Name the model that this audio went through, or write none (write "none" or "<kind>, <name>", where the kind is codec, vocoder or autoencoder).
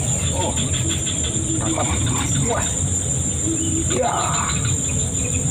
vocoder, BigVGAN v2